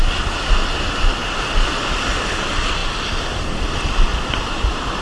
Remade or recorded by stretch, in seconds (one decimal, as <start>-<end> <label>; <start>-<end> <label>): 0.0-4.1 recorded; 4.1-5.0 remade